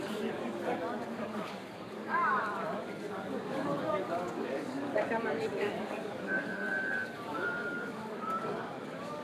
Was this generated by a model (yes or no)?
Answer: yes